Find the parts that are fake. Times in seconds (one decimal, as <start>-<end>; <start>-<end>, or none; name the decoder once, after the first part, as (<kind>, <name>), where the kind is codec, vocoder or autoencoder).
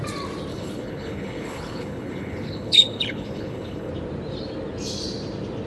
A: 0.5-3.9 (codec, HILCodec)